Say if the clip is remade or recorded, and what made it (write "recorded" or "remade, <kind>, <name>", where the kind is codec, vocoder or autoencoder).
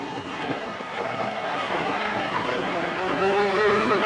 remade, codec, SNAC